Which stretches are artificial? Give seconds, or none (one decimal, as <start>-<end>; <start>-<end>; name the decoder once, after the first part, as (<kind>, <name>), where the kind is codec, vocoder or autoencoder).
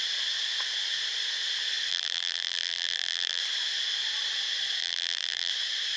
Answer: 1.9-3.4 (vocoder, BigVGAN v2); 4.8-5.5